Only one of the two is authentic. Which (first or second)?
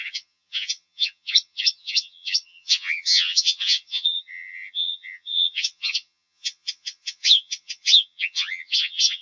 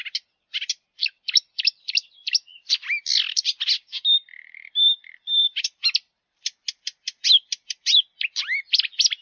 second